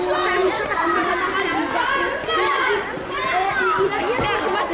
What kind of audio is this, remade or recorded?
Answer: recorded